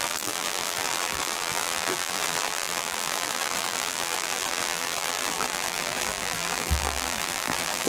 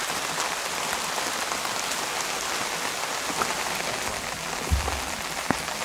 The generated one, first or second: first